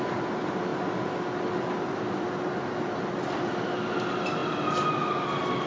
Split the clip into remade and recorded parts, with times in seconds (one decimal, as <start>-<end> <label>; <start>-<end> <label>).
0.0-5.7 recorded